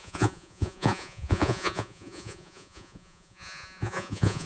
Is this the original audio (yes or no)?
no